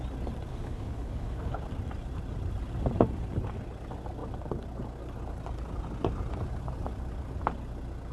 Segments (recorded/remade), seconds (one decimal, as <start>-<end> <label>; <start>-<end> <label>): 0.0-0.5 recorded; 0.5-1.6 remade; 1.6-8.1 recorded

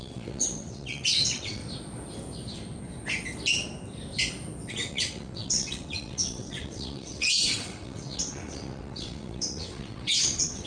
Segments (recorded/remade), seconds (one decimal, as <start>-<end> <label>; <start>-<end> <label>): 0.0-1.6 remade; 1.6-4.7 recorded; 4.7-10.7 remade